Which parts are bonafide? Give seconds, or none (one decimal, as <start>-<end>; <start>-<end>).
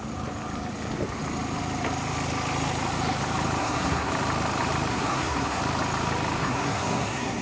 0.0-3.6; 4.1-4.9; 5.6-6.4